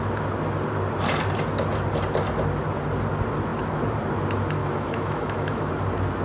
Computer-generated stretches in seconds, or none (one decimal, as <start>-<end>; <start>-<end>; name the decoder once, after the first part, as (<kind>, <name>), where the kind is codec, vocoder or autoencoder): 4.6-5.7 (autoencoder, DAC-VAE)